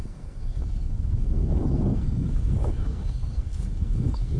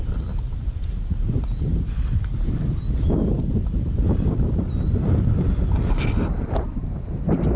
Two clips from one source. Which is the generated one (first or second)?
first